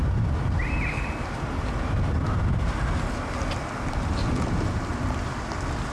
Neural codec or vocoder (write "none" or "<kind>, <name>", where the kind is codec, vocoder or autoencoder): none